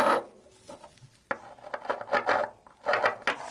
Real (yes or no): yes